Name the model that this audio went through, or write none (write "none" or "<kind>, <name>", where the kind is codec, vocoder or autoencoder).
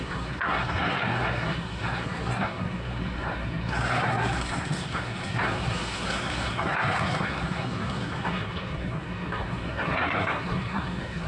codec, SNAC